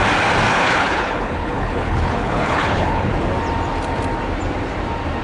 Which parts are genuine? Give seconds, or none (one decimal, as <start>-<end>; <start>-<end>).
0.0-0.5; 3.1-5.2